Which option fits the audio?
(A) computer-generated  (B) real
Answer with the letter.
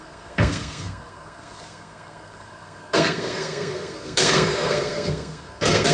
A